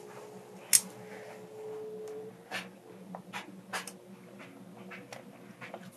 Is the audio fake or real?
real